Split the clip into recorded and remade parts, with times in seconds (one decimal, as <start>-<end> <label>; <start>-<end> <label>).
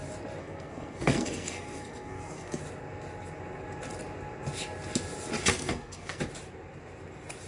0.0-0.4 recorded; 0.4-2.6 remade; 2.6-5.5 recorded; 5.5-6.2 remade; 6.2-7.5 recorded